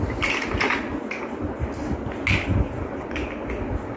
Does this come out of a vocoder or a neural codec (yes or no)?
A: no